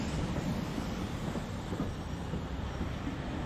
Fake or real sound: fake